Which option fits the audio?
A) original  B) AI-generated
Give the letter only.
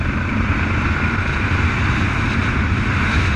A